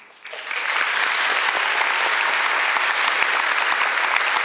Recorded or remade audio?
recorded